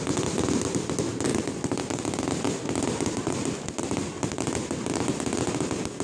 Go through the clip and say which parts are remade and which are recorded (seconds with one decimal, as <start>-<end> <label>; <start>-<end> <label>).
0.0-1.3 recorded; 1.3-2.1 remade; 2.1-6.0 recorded